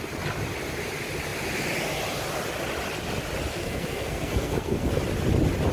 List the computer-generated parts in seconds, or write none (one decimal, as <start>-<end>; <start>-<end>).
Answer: 3.5-4.9